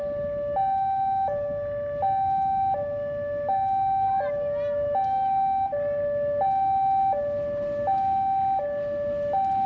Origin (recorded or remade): recorded